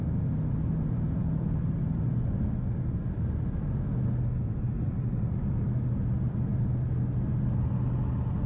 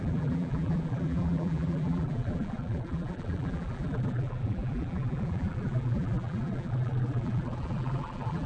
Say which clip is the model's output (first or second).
second